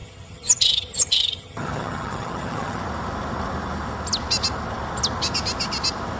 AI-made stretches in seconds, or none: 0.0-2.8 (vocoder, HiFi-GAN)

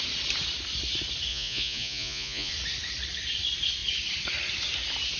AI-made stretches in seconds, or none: 1.3-2.5 (vocoder, Vocos)

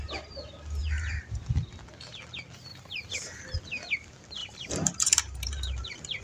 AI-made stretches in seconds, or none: 0.8-1.5 (vocoder, BigVGAN v2); 2.7-3.4; 4.4-6.2

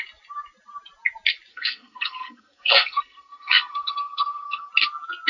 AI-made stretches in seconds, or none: 1.5-4.7 (codec, SNAC)

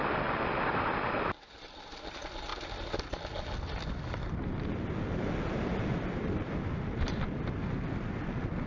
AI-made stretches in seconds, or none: none